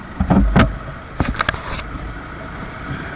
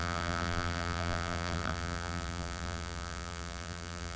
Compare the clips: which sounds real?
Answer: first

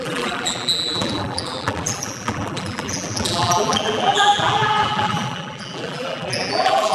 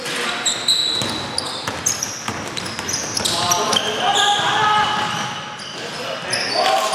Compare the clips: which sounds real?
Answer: second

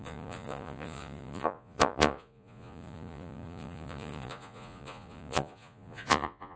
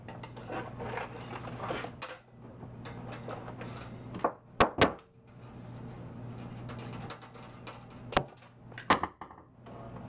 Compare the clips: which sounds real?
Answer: second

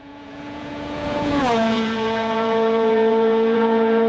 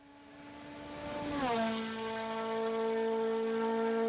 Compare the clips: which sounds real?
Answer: second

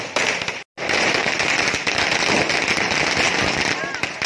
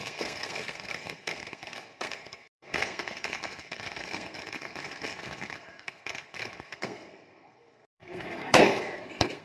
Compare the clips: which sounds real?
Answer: first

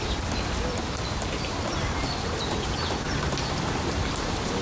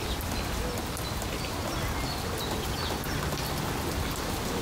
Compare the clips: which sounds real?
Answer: second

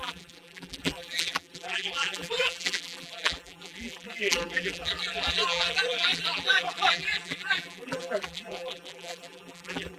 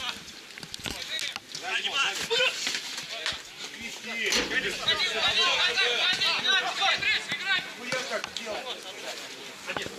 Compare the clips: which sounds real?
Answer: second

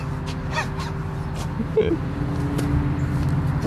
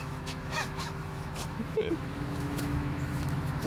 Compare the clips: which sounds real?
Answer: first